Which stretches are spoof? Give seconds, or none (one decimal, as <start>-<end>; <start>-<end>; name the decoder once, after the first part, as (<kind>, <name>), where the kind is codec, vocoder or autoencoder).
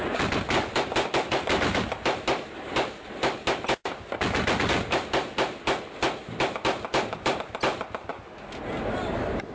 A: none